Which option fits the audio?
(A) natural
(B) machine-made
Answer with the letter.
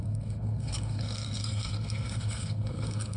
B